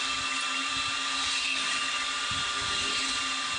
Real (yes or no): no